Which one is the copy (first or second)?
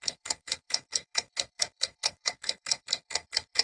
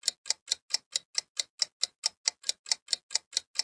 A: first